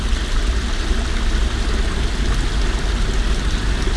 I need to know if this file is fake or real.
real